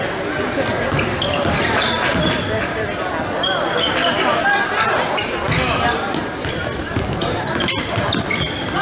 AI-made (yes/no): no